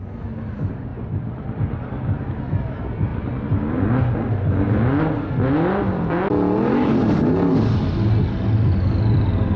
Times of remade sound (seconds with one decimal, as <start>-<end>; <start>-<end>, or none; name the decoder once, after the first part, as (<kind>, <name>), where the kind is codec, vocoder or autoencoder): none